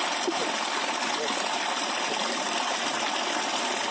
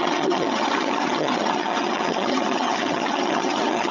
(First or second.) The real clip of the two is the first